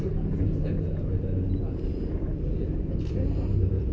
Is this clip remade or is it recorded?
recorded